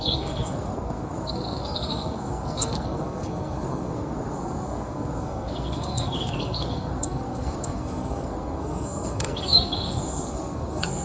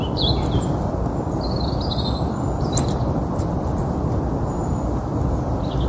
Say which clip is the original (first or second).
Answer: second